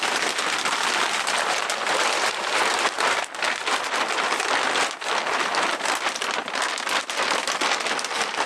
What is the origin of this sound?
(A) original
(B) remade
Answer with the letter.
A